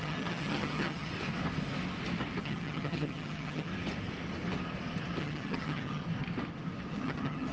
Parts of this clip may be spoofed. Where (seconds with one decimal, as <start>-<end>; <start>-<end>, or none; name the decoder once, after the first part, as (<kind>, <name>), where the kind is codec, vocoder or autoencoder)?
0.0-1.1 (vocoder, HiFi-GAN); 2.4-3.7; 5.2-6.0; 6.9-7.5